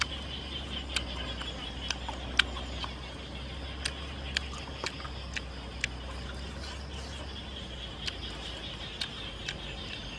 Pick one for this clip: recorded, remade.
recorded